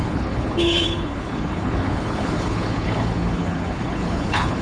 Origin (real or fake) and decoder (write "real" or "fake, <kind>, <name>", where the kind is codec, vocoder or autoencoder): fake, codec, HILCodec